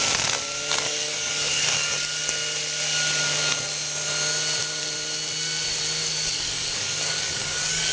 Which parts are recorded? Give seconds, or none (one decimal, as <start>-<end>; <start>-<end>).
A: 0.0-0.7; 2.2-6.0